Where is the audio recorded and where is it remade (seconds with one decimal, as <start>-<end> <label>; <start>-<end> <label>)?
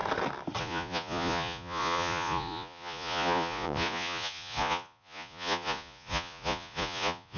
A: 0.0-0.6 recorded; 0.6-7.4 remade